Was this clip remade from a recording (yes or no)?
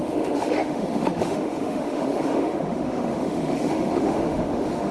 yes